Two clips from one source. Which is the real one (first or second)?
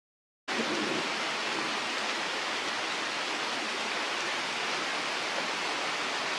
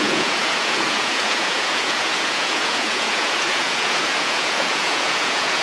first